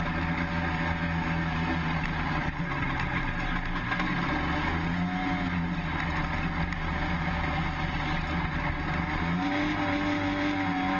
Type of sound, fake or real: real